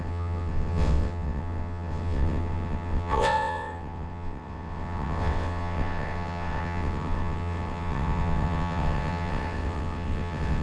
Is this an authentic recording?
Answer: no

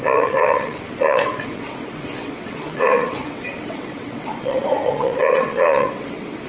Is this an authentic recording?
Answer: no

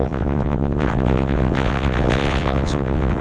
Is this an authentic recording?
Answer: no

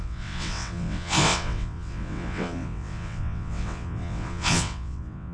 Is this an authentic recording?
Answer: no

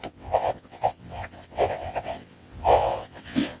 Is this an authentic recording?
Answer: no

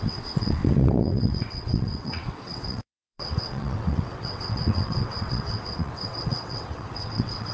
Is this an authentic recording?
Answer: no